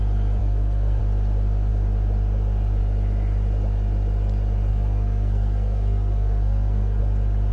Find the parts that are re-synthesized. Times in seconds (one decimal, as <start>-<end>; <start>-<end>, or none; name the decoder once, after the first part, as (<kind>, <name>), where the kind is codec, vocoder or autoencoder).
0.4-1.0 (codec, SNAC); 4.7-7.0